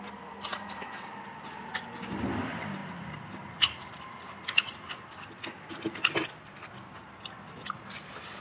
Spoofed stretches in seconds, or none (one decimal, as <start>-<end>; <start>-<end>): 0.5-1.0